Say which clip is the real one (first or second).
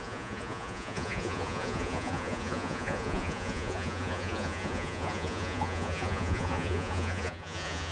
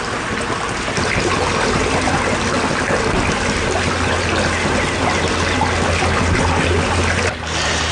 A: second